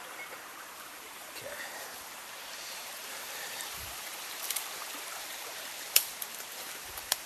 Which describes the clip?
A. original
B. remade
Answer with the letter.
B